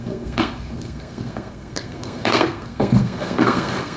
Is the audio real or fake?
fake